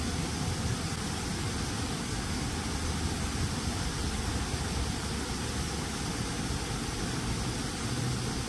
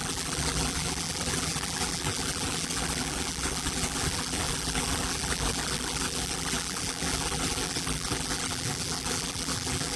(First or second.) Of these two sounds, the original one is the first